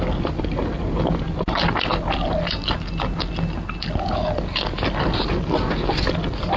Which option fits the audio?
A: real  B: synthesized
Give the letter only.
A